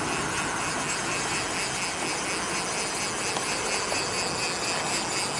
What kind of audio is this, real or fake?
real